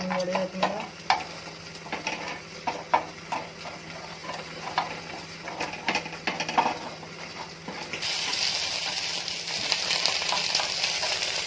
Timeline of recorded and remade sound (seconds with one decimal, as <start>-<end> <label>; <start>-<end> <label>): 0.0-11.5 recorded